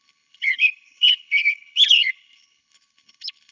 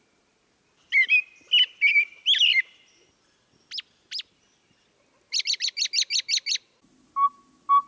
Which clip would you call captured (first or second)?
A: second